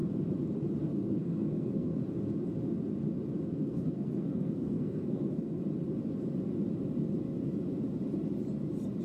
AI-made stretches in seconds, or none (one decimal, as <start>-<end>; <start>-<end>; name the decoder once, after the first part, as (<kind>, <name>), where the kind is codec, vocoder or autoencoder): 0.8-2.0 (codec, SNAC); 3.4-5.6